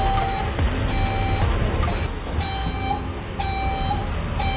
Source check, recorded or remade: recorded